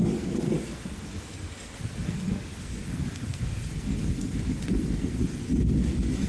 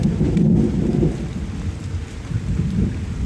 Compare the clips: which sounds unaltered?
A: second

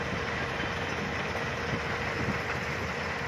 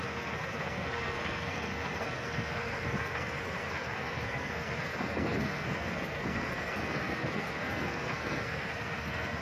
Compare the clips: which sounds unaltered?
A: first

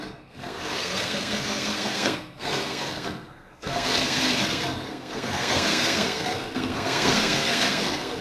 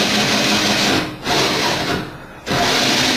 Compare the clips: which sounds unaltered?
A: second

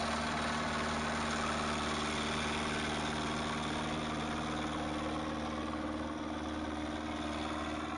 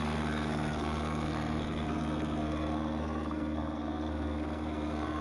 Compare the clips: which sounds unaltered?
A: first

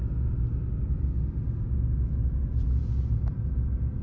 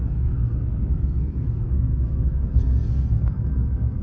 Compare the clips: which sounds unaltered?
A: first